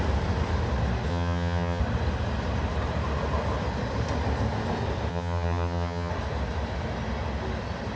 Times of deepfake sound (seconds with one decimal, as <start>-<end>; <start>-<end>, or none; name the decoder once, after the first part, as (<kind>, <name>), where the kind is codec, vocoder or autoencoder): 1.1-1.8 (vocoder, HiFi-GAN); 5.1-6.1